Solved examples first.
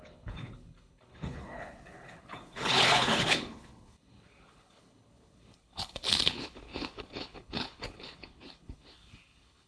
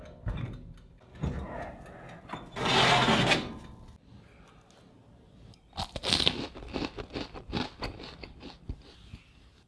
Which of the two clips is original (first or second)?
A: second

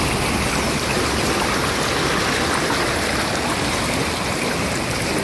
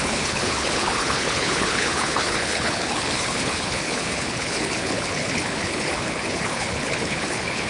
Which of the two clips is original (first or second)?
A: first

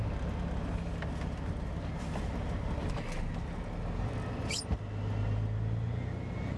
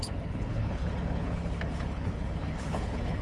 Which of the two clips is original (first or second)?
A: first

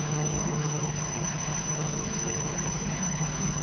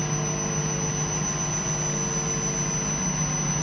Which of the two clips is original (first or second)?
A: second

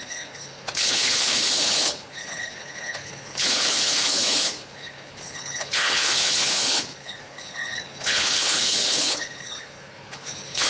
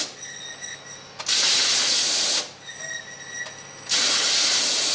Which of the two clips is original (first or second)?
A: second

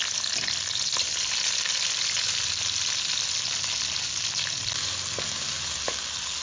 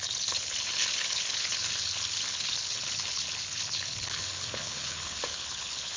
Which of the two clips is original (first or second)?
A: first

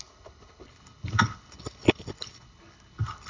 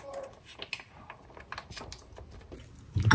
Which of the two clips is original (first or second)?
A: second